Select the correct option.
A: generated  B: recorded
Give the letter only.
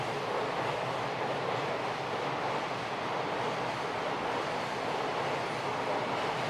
B